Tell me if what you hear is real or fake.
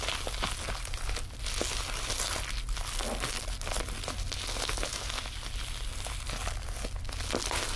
real